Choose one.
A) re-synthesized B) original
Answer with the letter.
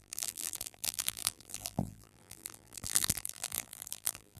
A